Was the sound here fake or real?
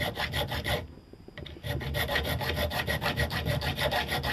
fake